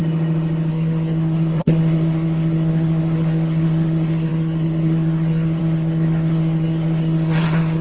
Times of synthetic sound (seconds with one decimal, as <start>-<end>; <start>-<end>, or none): 0.7-7.8